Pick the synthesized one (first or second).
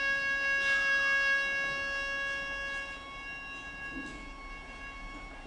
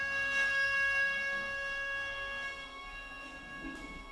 second